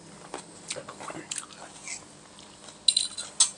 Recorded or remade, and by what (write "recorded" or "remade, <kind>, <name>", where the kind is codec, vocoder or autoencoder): recorded